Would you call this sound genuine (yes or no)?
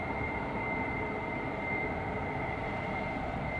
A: no